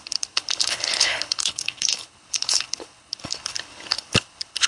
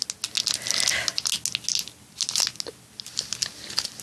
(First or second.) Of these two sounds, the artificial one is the first